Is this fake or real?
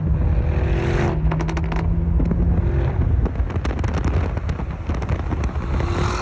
real